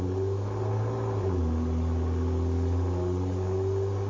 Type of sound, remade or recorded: recorded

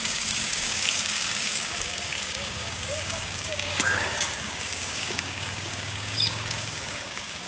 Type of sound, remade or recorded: remade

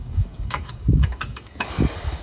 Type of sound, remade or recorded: remade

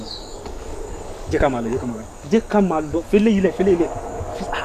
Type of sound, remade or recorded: remade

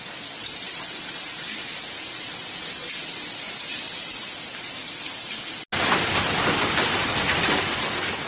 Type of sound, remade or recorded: recorded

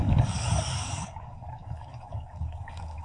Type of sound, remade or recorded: remade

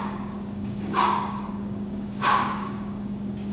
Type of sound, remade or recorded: remade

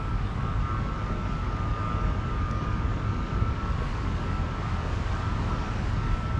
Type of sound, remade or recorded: remade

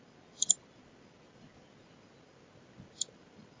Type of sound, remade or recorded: recorded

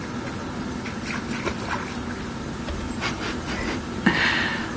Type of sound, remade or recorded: recorded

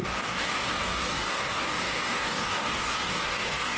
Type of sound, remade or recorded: remade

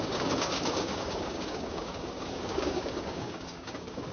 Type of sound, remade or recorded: remade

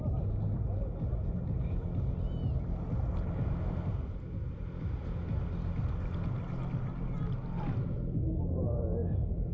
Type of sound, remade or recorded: recorded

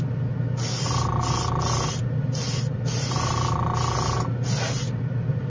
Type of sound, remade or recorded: recorded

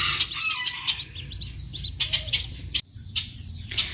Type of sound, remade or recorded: recorded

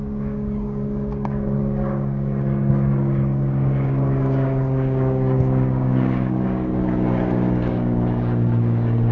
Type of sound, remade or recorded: remade